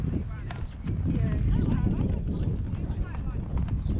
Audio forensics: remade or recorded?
recorded